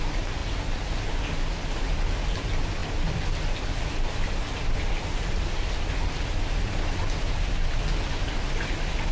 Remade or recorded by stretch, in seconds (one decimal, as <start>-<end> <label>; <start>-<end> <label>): 0.0-9.1 recorded